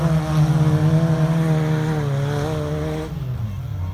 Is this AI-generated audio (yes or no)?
no